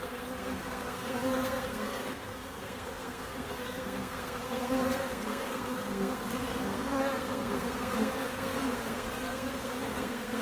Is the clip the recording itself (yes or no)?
no